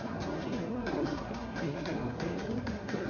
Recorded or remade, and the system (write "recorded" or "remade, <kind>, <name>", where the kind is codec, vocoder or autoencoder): remade, codec, SNAC